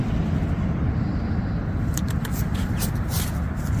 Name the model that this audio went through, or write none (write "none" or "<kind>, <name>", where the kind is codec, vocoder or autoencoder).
none